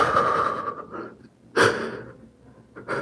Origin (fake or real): real